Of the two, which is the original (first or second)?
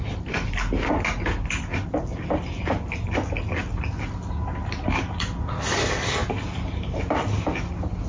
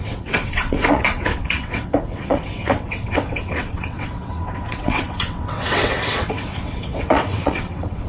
first